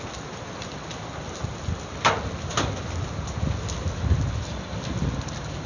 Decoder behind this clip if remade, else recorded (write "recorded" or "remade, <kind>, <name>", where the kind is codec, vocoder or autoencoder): recorded